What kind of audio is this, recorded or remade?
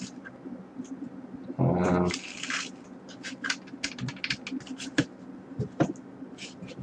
recorded